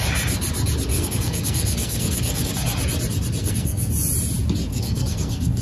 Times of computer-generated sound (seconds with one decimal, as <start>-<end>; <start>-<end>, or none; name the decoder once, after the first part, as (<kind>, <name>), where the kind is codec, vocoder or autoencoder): 0.9-2.5 (codec, SNAC); 3.4-3.9; 4.7-5.6